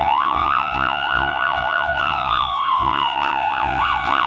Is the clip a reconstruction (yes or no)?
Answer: yes